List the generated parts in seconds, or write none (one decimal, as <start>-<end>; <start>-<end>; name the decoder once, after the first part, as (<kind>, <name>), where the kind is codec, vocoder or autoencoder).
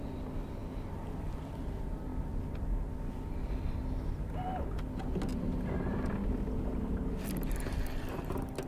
0.6-1.5 (vocoder, BigVGAN v2)